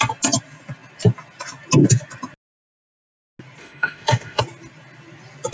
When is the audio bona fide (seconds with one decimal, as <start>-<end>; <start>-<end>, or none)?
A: 0.0-3.6; 4.4-5.5